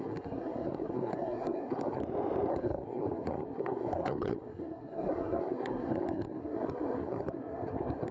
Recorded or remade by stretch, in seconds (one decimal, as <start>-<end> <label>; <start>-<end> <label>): 0.0-2.0 remade; 2.0-2.5 recorded; 2.5-8.1 remade